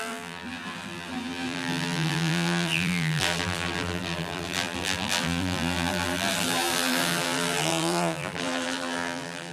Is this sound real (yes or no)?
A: no